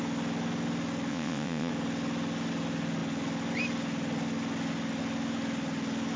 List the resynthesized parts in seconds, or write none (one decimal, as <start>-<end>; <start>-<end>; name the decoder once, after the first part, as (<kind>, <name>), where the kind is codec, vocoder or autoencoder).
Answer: 1.1-1.7 (vocoder, WaveNeXt)